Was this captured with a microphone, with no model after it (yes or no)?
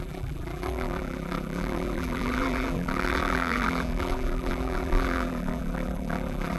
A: no